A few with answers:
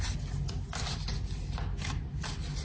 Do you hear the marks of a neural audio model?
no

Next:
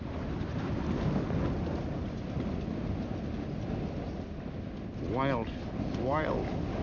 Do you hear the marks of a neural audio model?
no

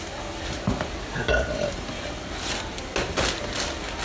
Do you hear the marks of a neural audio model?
no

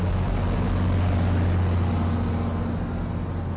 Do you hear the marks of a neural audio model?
no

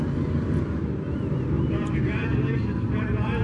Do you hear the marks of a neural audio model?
no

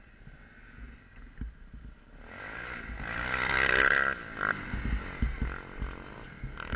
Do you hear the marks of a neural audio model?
no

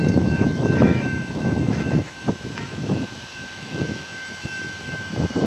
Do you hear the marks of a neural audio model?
yes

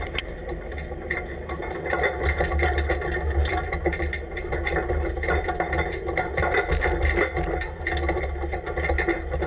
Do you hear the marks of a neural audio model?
no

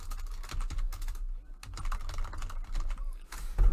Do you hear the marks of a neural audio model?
no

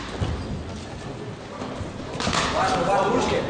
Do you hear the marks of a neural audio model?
no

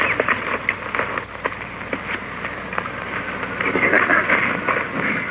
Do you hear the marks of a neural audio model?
no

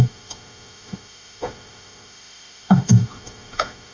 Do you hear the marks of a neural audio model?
yes